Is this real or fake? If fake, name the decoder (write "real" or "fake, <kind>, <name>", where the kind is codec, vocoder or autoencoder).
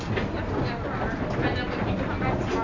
real